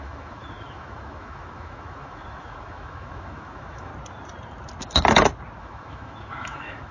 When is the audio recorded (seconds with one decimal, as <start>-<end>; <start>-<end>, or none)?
3.9-5.6